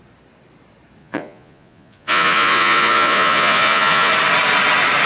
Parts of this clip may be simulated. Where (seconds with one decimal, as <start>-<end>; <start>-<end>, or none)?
1.0-4.1